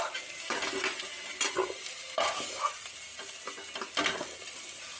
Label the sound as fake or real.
real